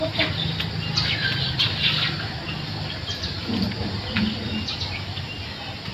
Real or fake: real